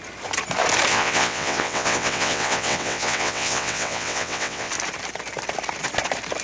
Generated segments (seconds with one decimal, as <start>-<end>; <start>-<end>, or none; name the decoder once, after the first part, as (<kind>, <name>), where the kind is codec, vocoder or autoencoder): 0.9-4.7 (vocoder, WaveNeXt)